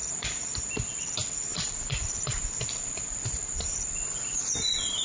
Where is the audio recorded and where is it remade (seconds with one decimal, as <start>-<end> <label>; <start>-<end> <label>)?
0.0-0.6 remade; 0.6-1.5 recorded; 1.5-4.5 remade; 4.5-5.0 recorded

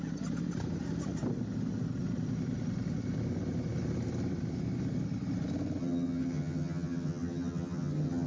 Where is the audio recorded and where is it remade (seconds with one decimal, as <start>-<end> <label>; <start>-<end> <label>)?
0.0-5.8 recorded; 5.8-8.3 remade

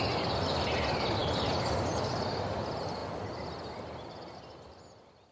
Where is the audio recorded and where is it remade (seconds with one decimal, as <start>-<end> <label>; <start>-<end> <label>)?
0.0-5.3 recorded

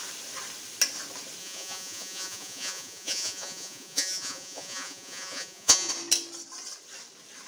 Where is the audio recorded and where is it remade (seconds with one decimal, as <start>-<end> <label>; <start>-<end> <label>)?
0.0-1.4 recorded; 1.4-5.9 remade; 5.9-7.5 recorded

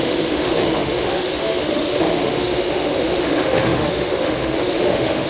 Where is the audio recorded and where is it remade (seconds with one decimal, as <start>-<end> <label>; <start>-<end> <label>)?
0.0-5.3 remade

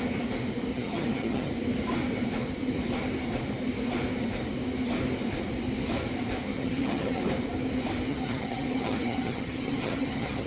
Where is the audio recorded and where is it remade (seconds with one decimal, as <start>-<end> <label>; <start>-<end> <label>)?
0.0-0.7 recorded; 0.7-1.5 remade; 1.5-6.5 recorded; 6.5-7.2 remade; 7.2-8.1 recorded; 8.1-10.5 remade

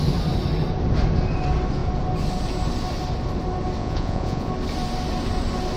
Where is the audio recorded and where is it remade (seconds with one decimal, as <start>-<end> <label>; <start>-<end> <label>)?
0.0-3.8 recorded; 3.8-4.5 remade; 4.5-5.8 recorded